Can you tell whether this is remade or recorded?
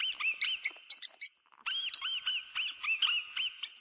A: recorded